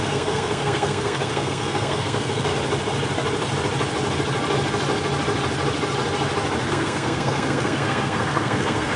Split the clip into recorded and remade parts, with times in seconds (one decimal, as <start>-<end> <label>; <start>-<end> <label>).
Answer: 0.0-2.5 remade; 2.5-6.7 recorded; 6.7-9.0 remade